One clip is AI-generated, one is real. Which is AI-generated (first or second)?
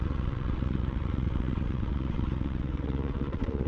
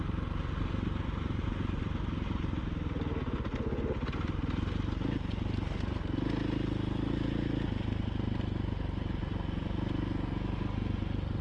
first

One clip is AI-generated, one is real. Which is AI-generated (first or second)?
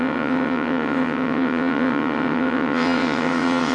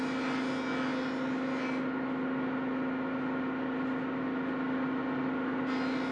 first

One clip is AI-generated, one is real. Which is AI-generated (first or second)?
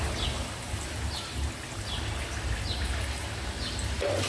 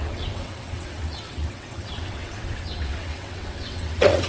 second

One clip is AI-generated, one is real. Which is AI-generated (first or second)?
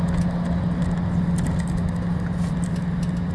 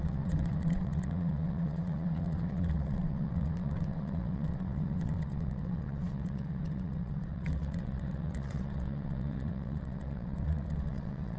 second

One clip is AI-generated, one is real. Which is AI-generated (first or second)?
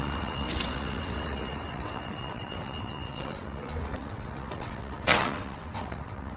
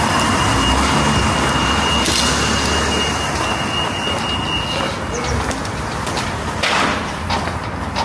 first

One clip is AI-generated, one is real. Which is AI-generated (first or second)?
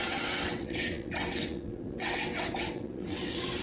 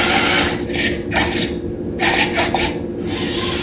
first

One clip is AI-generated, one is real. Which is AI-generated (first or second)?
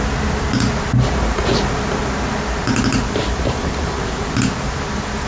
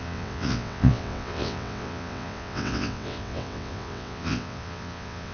second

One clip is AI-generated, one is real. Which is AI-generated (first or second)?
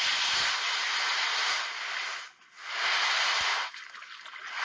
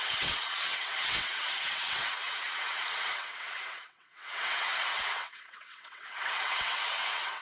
second